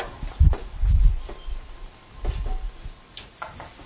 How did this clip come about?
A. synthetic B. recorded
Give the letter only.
B